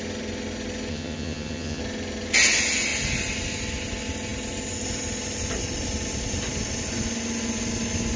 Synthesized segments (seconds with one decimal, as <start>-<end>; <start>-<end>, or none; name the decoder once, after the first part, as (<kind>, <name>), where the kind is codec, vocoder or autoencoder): 0.9-1.8 (vocoder, HiFi-GAN)